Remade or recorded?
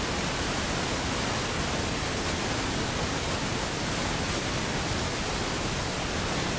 recorded